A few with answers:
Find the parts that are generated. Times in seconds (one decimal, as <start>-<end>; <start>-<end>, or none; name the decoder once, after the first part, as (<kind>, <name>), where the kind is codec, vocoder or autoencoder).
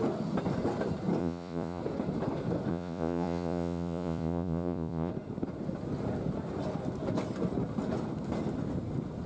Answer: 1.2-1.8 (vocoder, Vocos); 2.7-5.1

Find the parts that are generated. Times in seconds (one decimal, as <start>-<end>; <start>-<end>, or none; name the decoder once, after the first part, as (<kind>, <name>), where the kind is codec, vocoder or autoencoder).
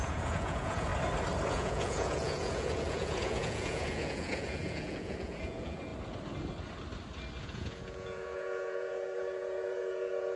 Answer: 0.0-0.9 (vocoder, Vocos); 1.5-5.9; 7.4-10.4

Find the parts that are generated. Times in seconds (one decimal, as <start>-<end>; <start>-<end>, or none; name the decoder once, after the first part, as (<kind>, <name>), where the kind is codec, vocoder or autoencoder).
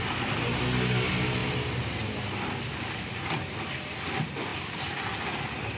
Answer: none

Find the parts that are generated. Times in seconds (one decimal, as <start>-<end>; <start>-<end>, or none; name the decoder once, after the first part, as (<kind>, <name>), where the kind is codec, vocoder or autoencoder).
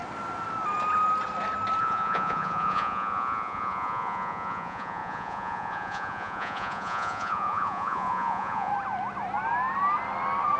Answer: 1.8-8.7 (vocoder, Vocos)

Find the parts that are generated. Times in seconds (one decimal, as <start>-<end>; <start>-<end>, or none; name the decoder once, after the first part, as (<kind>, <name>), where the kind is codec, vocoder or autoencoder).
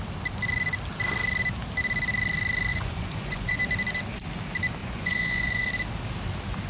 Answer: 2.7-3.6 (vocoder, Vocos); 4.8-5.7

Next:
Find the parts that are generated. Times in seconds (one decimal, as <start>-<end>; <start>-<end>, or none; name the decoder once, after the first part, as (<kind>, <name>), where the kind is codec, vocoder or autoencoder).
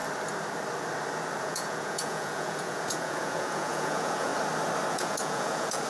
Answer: 1.4-4.3 (vocoder, Vocos); 4.9-5.9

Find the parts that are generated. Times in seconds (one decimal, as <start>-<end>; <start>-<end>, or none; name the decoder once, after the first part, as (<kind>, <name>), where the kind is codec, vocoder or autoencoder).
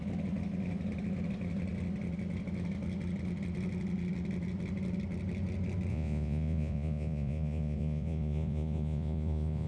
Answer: 5.9-9.7 (vocoder, Vocos)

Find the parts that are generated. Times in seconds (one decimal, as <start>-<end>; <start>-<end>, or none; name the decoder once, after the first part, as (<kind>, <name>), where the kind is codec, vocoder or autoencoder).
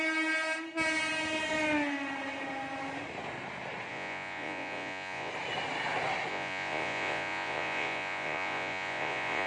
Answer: 3.9-5.3 (vocoder, Vocos); 6.3-9.5